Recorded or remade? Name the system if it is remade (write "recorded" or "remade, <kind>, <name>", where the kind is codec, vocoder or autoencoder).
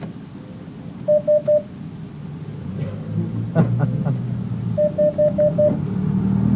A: recorded